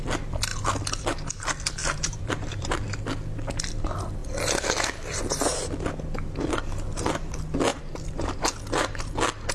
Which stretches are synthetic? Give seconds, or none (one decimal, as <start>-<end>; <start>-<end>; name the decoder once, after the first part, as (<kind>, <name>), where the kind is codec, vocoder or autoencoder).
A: 1.8-2.9 (vocoder, BigVGAN v2); 7.7-8.4

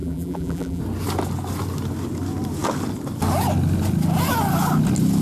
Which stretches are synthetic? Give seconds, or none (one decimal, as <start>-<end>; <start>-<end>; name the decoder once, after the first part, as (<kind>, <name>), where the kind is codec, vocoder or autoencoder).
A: 0.0-0.8 (vocoder, BigVGAN v2)

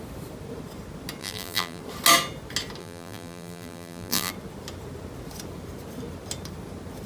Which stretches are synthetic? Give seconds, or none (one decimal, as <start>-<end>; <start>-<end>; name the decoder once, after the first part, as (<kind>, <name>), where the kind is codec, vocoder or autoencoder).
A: 1.2-1.8 (vocoder, BigVGAN v2); 2.8-4.3

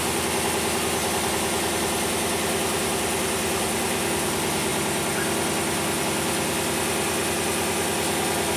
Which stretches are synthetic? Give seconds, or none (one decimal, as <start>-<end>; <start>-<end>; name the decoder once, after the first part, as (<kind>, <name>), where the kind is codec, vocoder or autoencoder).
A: none

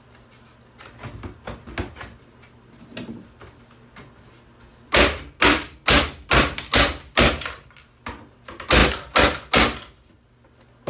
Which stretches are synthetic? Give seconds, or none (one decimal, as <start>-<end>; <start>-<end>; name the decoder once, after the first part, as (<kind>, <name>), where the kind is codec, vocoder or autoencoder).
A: none

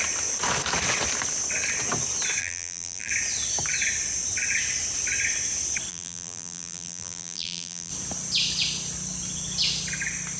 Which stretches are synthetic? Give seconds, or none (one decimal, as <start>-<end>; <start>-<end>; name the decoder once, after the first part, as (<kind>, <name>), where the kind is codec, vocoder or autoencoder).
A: 2.4-3.1 (vocoder, BigVGAN v2); 5.9-7.9

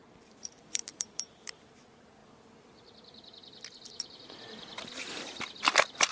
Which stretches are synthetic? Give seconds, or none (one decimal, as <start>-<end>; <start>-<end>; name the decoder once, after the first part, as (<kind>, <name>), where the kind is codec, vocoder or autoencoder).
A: 0.0-1.7 (vocoder, BigVGAN v2)

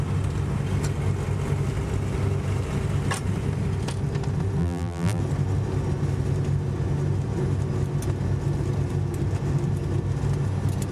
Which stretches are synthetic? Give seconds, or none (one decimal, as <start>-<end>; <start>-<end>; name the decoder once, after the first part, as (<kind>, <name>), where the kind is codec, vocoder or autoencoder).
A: 4.6-5.2 (vocoder, BigVGAN v2)